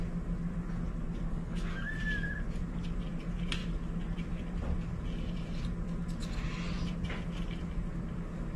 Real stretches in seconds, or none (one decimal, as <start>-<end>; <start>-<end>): 0.0-1.3; 1.9-8.6